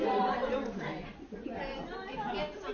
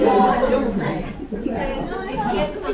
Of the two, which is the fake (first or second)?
second